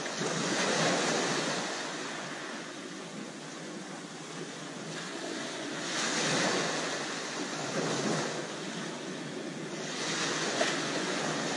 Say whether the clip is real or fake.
fake